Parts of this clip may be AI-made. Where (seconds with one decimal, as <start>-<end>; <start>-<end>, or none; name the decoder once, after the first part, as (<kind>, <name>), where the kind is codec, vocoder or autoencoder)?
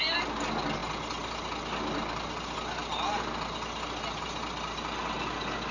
none